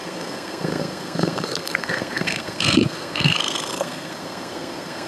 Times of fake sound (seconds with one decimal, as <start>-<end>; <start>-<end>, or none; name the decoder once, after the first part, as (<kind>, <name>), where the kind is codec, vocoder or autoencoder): 0.0-5.1 (codec, SNAC)